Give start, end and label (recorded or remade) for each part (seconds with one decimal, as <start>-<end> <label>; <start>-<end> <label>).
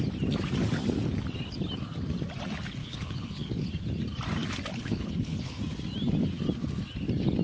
0.0-2.8 recorded; 2.8-3.7 remade; 3.7-4.7 recorded; 4.7-5.6 remade; 5.6-7.4 recorded